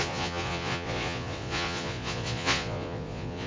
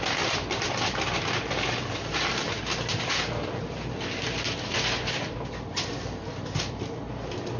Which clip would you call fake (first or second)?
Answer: first